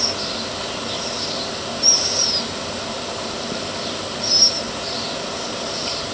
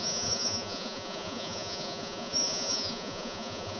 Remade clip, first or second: second